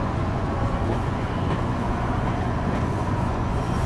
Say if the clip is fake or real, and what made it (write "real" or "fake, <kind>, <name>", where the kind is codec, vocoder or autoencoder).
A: fake, vocoder, Vocos